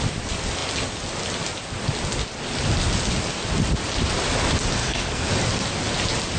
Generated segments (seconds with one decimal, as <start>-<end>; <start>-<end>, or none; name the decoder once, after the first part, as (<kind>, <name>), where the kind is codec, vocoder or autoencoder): 4.8-5.3 (codec, SNAC)